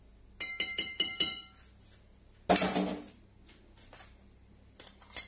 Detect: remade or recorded recorded